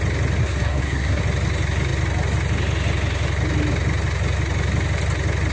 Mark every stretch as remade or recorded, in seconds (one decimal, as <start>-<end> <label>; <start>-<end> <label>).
0.0-0.4 recorded; 0.4-1.2 remade; 1.2-5.5 recorded